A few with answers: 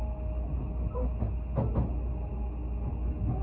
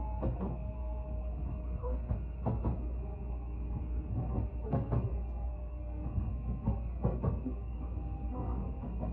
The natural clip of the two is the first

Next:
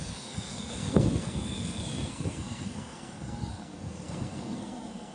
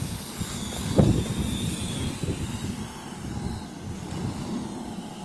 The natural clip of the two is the second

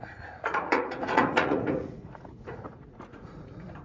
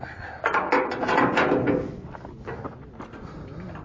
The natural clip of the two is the second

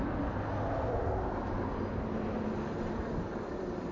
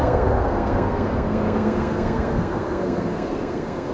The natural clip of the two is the first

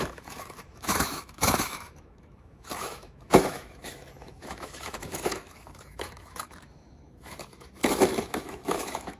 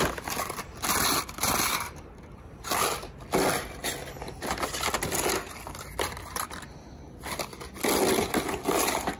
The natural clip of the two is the second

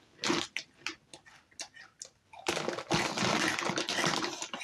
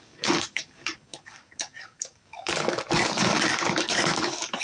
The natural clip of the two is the first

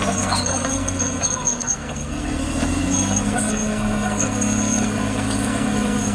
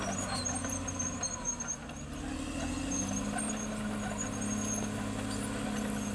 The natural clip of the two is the second